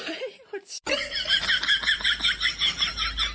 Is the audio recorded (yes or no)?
yes